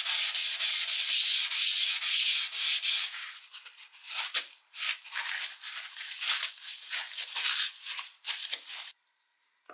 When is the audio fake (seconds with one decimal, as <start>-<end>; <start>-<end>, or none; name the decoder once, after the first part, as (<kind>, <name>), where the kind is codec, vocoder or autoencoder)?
1.3-2.4 (vocoder, Vocos)